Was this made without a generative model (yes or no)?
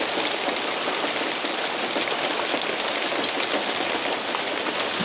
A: yes